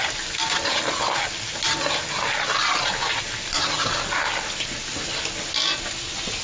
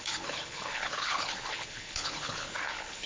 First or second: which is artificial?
second